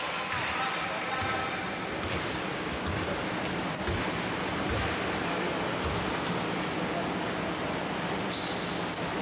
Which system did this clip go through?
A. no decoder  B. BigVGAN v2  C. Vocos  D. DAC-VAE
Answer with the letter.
A